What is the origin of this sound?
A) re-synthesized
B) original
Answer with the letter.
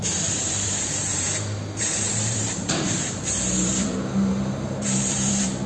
A